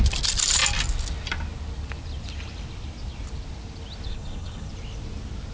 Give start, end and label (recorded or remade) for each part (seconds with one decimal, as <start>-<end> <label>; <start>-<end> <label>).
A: 0.0-4.1 recorded; 4.1-4.7 remade; 4.7-5.5 recorded